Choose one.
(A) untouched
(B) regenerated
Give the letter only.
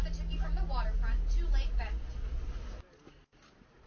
A